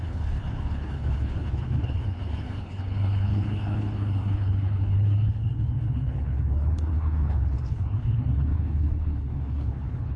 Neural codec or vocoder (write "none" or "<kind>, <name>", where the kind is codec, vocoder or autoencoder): codec, HILCodec